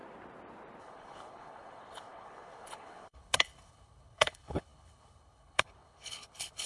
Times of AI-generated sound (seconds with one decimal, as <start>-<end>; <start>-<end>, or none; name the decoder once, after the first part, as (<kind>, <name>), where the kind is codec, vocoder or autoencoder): 0.8-6.7 (codec, HILCodec)